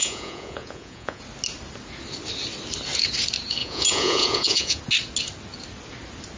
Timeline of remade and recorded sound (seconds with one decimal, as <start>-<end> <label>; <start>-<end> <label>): 0.0-1.2 remade; 1.2-3.6 recorded; 3.6-4.8 remade; 4.8-6.4 recorded